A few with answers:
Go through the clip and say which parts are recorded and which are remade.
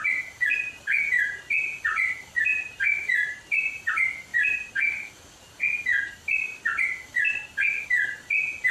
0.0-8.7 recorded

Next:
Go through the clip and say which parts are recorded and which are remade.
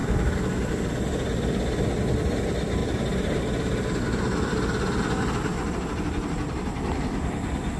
0.0-7.8 recorded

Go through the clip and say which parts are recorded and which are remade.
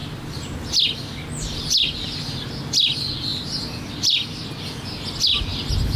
0.0-6.0 recorded